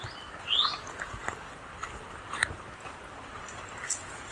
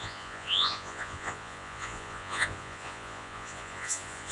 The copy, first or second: second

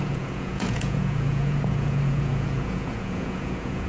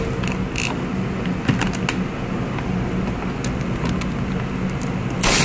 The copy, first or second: first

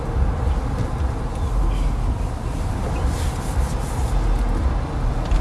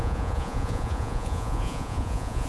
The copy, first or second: second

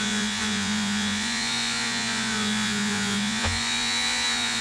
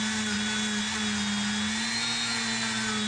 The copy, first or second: first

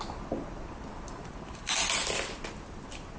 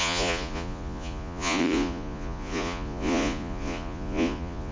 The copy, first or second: second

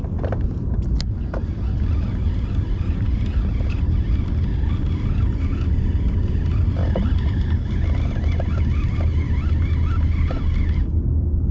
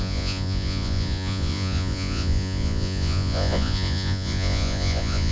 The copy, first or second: second